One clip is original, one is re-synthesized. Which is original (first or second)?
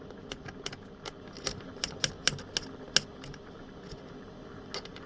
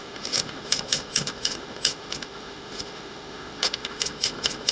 first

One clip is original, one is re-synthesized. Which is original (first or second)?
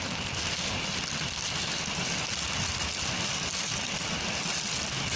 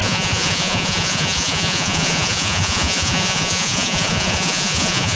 first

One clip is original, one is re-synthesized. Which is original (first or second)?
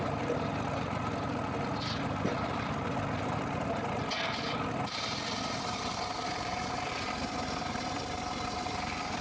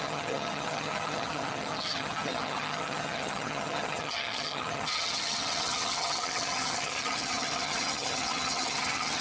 first